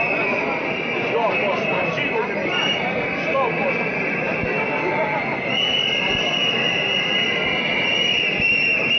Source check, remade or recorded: recorded